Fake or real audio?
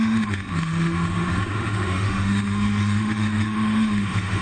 fake